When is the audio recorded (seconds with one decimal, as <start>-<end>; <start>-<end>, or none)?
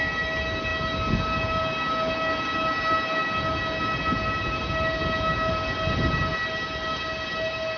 0.0-7.8